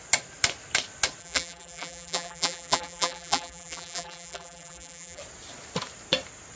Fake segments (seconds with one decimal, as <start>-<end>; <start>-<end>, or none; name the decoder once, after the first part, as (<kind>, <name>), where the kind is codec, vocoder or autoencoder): 1.2-5.2 (vocoder, BigVGAN v2)